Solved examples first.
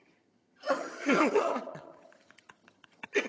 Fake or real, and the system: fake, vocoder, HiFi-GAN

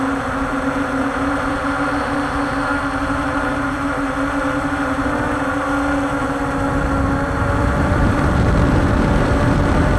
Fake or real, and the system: fake, vocoder, BigVGAN v2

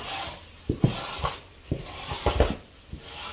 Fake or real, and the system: real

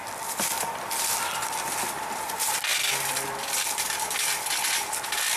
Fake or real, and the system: real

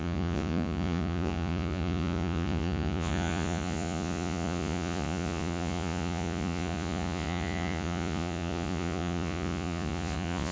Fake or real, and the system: fake, vocoder, Vocos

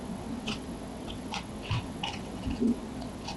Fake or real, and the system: fake, vocoder, WaveNeXt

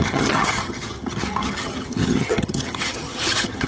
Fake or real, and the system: fake, vocoder, HiFi-GAN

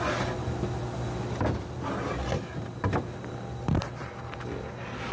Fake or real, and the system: real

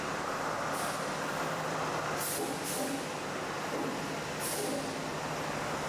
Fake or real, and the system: real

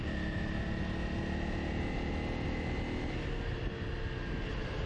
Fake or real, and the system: real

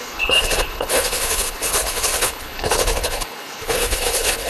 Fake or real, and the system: fake, codec, HILCodec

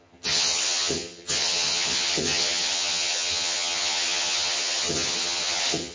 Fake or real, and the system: fake, vocoder, HiFi-GAN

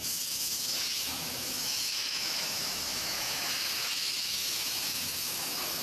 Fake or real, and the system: fake, autoencoder, DAC-VAE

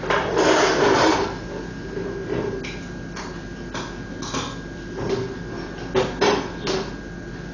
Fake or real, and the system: real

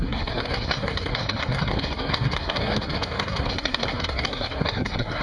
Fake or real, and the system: fake, codec, SNAC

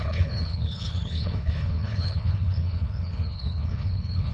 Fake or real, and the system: fake, codec, HILCodec